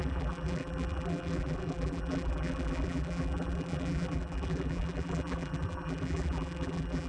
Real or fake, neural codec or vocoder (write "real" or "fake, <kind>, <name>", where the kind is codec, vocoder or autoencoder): fake, vocoder, BigVGAN v2